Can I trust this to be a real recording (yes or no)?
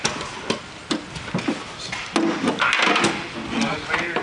yes